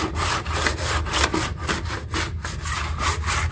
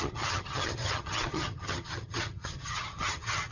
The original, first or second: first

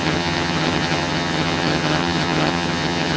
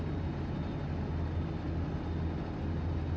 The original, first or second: second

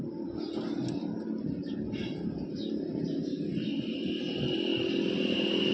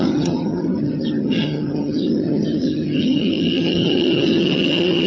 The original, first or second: first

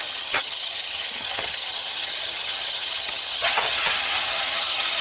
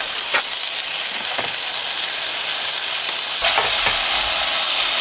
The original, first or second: second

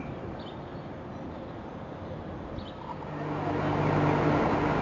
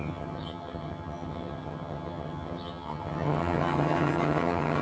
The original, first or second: first